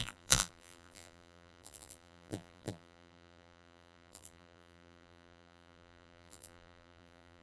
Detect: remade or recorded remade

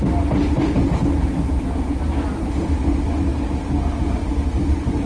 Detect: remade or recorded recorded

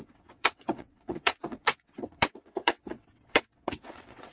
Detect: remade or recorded remade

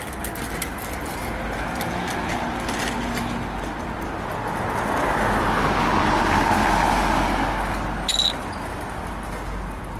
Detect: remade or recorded recorded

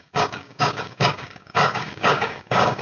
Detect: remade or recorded remade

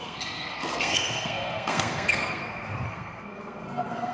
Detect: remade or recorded remade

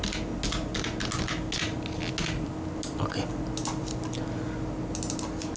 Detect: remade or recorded recorded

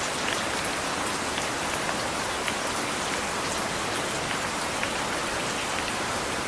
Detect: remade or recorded recorded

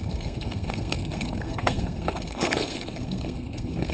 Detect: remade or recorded remade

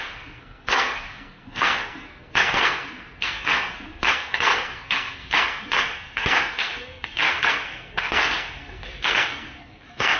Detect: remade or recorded remade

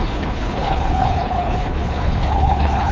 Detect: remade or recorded remade